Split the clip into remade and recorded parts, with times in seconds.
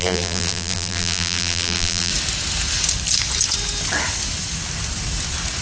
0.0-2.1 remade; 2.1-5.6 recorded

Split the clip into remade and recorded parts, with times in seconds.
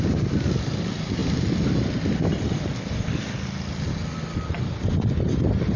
0.0-5.8 recorded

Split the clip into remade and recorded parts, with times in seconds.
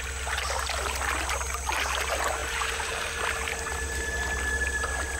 0.0-2.4 recorded; 2.4-3.2 remade; 3.2-5.2 recorded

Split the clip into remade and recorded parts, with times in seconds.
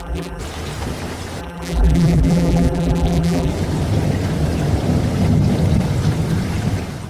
0.0-0.4 remade; 0.4-1.4 recorded; 1.4-3.5 remade; 3.5-7.1 recorded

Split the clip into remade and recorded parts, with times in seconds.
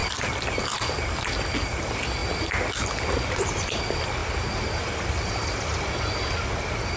0.0-7.0 recorded